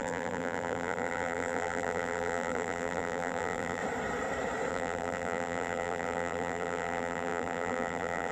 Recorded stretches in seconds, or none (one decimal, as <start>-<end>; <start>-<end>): 3.8-4.7

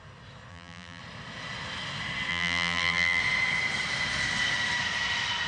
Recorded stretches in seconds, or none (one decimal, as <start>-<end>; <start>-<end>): 0.0-0.5; 1.0-2.3; 3.2-5.5

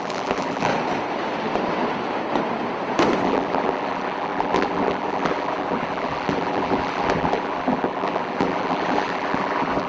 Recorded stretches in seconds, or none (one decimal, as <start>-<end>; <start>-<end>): 0.7-3.2

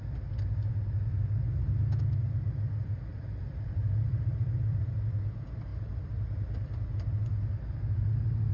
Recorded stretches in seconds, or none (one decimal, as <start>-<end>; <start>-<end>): 0.0-3.1; 4.9-5.7; 6.9-8.5

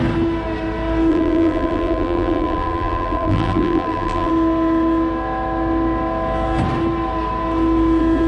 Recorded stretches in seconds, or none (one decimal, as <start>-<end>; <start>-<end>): 0.0-1.1; 4.3-8.3

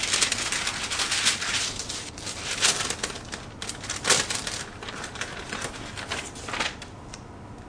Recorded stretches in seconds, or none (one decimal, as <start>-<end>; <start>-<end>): 0.0-7.7

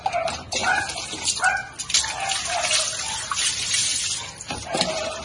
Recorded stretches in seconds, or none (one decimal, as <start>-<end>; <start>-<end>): 0.6-1.2; 1.6-3.1; 3.9-5.2